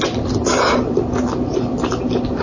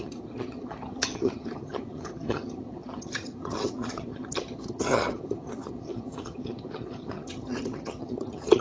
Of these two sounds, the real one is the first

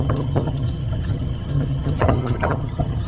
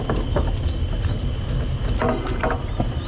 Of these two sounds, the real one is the second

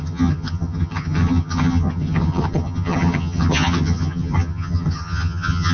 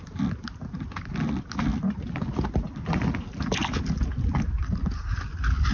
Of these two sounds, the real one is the second